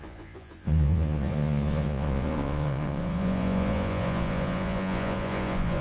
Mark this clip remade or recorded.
remade